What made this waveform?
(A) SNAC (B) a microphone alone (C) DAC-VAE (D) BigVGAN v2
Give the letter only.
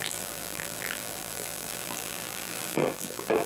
D